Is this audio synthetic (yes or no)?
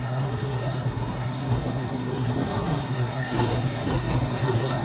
yes